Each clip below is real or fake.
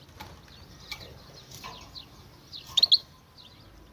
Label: real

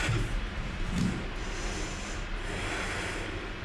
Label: real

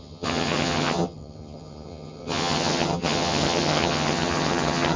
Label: fake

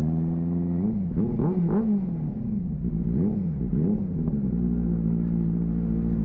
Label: real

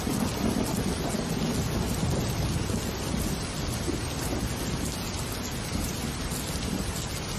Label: real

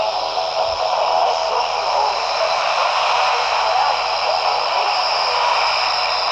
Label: fake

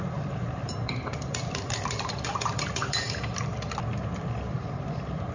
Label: fake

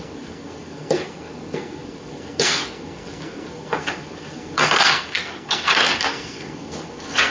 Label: fake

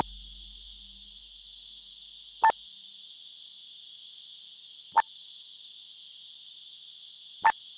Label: real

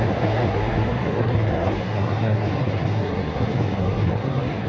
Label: fake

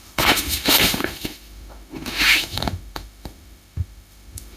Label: fake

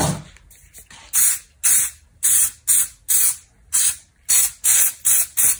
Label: real